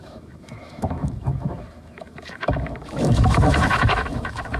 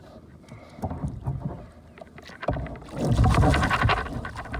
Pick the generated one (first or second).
first